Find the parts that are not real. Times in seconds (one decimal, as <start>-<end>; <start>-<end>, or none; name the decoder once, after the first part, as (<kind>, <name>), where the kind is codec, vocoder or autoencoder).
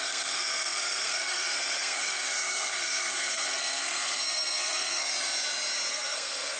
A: 0.0-5.1 (codec, SNAC); 5.9-6.6